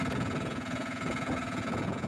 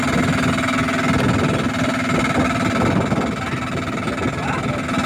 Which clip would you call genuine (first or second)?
second